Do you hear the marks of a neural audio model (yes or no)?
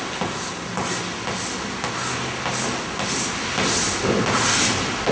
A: no